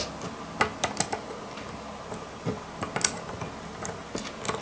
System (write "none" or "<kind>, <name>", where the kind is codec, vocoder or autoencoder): none